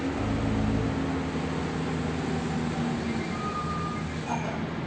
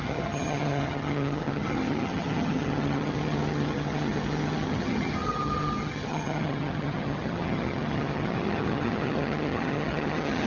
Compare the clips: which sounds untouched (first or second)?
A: first